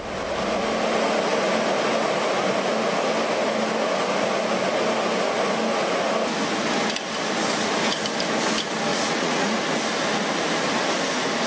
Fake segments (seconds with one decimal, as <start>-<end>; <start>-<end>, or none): 8.9-9.6